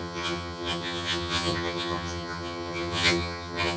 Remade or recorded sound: remade